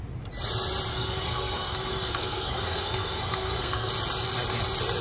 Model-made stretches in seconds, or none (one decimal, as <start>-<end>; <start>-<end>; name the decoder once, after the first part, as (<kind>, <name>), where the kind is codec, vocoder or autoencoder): 0.9-3.9 (codec, SNAC)